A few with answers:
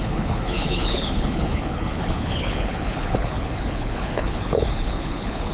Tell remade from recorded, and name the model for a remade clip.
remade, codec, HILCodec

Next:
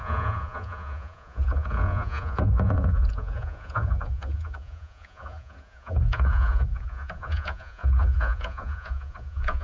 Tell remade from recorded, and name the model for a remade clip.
remade, vocoder, Vocos